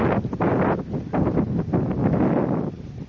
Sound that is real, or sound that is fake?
real